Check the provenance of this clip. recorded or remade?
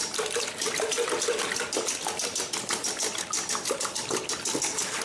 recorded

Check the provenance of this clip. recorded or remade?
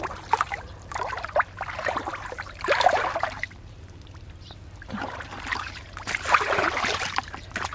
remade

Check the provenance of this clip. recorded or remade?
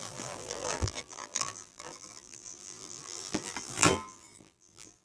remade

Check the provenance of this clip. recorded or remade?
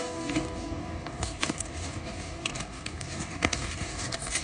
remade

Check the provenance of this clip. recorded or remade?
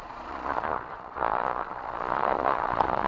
remade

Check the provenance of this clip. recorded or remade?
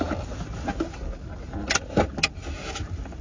recorded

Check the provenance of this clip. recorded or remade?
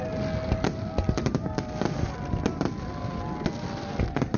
recorded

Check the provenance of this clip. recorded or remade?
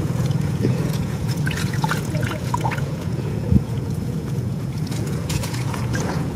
remade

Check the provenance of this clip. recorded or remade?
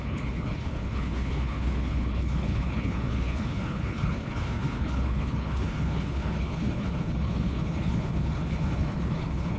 remade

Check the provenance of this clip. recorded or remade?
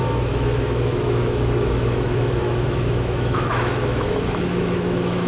remade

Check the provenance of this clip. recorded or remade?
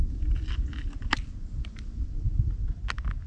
recorded